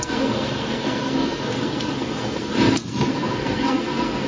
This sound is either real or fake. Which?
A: fake